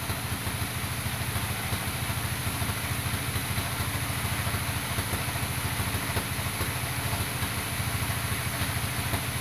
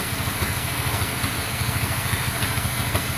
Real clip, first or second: first